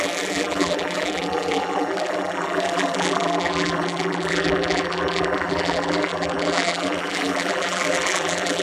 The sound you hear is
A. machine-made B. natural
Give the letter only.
A